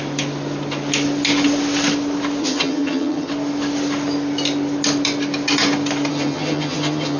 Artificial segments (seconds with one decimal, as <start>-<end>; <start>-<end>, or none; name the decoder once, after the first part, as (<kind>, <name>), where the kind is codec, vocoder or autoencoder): 2.4-3.3 (vocoder, HiFi-GAN); 6.1-7.2